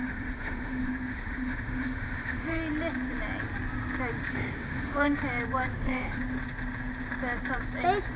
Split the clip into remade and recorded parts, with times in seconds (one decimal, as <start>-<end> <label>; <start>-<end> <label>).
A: 0.0-2.6 remade; 2.6-4.3 recorded; 4.3-5.2 remade; 5.2-5.7 recorded; 5.7-6.2 remade; 6.2-8.2 recorded